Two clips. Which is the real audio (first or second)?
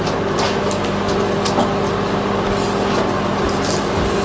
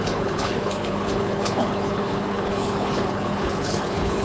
first